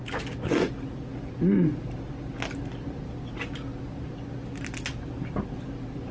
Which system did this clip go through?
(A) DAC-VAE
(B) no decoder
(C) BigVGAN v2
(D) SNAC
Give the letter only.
B